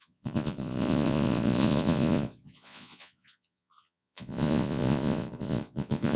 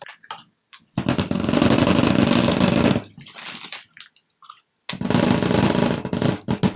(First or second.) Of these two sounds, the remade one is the first